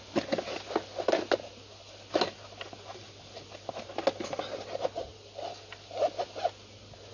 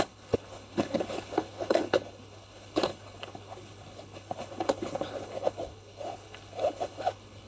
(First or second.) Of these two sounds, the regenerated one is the second